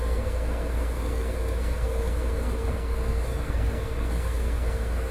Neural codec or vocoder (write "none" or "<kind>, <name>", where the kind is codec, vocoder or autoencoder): codec, SNAC